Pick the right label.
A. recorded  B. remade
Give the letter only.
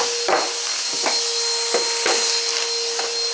A